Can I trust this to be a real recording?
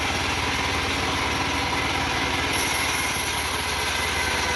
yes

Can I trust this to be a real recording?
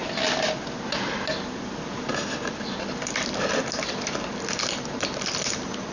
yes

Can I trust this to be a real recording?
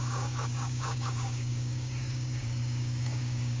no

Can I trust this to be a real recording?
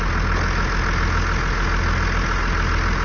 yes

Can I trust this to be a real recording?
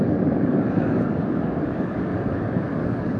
no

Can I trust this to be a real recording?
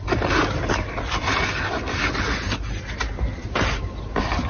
yes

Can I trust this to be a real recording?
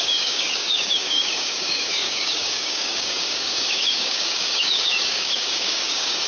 no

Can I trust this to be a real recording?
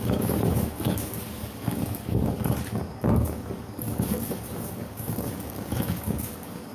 no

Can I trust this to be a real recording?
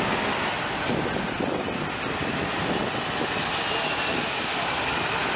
yes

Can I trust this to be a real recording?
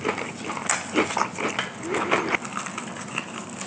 yes